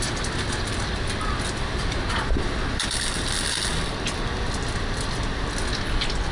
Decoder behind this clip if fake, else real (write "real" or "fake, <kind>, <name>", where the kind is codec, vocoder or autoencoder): real